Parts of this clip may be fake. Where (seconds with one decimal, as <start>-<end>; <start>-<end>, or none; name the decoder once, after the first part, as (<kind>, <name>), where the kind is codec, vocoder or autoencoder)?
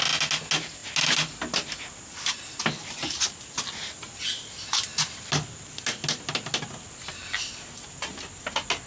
none